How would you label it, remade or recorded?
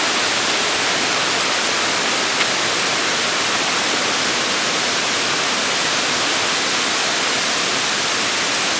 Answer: recorded